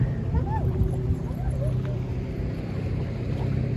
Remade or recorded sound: remade